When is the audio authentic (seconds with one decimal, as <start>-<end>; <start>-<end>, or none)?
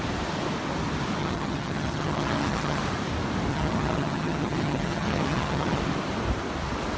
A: 0.0-1.2; 2.8-3.5; 5.8-7.0